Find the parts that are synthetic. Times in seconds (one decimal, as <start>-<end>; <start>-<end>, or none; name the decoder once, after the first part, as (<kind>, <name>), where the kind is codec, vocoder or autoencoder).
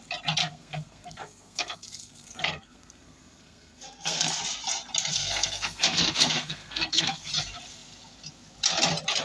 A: 0.4-4.4 (codec, SNAC); 5.1-7.3